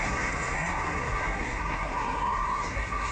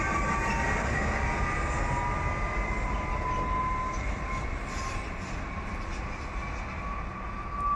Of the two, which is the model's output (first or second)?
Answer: first